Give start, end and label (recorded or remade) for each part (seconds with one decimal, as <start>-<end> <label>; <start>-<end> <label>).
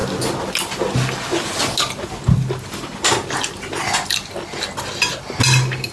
0.0-5.9 recorded